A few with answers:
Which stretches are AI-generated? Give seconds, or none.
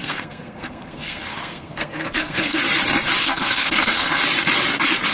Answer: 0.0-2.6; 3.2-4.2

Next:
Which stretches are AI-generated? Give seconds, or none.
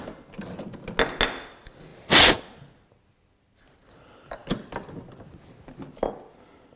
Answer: none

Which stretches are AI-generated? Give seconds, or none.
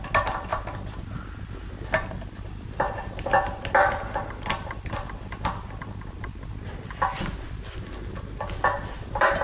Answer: none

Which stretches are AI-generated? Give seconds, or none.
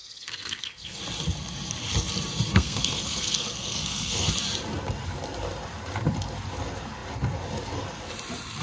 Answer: 0.0-1.0; 2.5-4.3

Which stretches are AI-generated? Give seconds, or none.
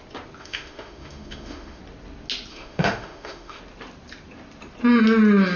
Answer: 0.4-1.8; 2.5-3.6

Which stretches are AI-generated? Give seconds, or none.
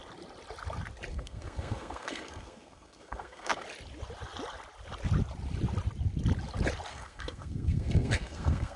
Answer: 1.1-3.6; 6.9-8.8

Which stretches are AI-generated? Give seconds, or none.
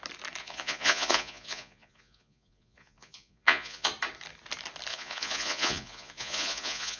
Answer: 0.4-3.9; 4.9-7.0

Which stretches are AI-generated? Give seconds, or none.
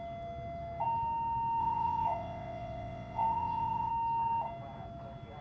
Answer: 1.6-3.9